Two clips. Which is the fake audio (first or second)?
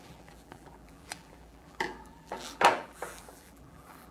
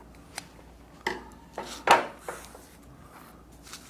first